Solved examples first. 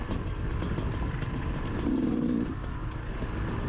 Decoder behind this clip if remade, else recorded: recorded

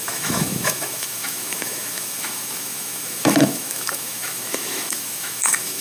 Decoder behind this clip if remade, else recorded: remade, autoencoder, DAC-VAE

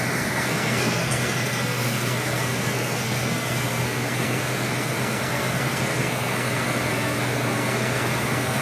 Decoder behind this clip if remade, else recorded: remade, codec, SNAC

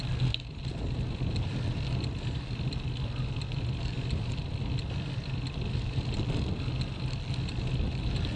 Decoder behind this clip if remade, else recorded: recorded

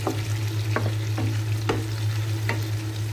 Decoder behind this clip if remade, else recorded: recorded